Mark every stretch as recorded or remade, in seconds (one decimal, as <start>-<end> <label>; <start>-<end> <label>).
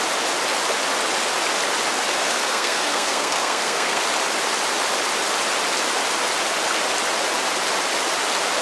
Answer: 0.0-2.2 recorded; 2.2-4.0 remade; 4.0-8.6 recorded